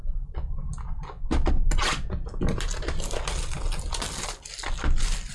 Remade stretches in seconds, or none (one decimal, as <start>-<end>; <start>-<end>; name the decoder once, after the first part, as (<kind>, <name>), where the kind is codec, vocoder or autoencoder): none

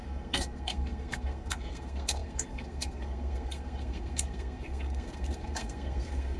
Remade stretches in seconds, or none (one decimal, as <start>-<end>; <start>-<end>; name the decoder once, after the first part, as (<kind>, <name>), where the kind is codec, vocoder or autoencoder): 0.0-6.4 (codec, SNAC)